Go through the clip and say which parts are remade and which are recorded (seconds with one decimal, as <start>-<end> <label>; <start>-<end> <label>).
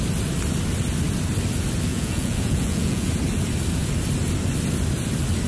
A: 0.0-1.9 recorded; 1.9-3.1 remade; 3.1-5.5 recorded